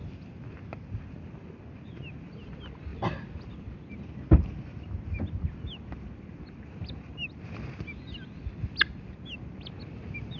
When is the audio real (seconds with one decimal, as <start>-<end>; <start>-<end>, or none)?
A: 0.0-10.4